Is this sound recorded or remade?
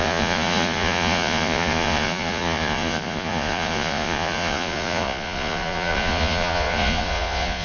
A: remade